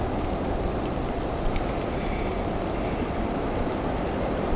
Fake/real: real